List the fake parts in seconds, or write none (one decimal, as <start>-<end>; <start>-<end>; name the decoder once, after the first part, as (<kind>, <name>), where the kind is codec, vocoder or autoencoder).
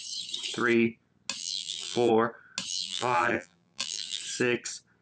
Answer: 1.4-2.1 (vocoder, BigVGAN v2); 2.7-4.2